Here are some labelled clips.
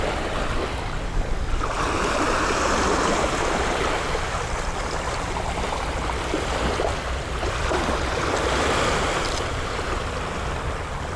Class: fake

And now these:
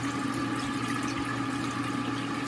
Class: real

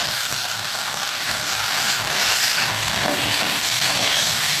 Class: fake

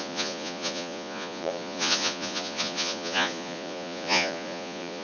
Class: fake